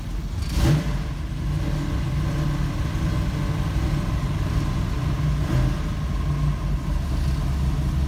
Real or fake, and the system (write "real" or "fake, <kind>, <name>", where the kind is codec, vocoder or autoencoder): real